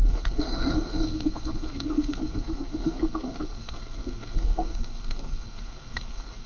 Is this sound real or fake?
fake